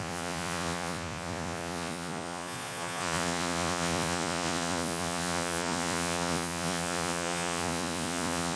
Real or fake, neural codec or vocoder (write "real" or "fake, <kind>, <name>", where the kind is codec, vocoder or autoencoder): fake, vocoder, Vocos